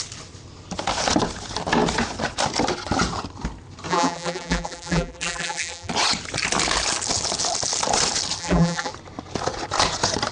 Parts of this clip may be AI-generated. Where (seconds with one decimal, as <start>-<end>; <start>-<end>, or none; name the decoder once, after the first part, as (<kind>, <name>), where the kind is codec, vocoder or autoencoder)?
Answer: 3.9-5.9 (vocoder, BigVGAN v2); 8.4-8.9